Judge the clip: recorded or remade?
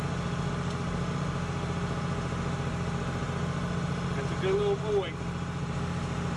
recorded